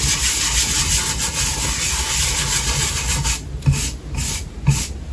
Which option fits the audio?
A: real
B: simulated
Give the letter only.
A